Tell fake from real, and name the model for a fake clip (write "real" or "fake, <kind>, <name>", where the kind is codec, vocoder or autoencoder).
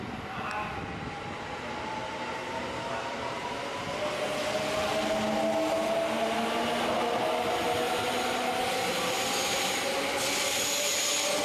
real